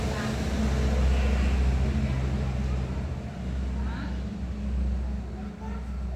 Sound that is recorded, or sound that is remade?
recorded